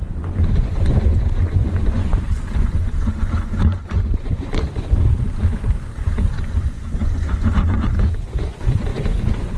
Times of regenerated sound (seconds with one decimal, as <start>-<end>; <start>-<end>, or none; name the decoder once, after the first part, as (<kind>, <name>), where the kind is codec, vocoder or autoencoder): 0.0-9.6 (vocoder, Vocos)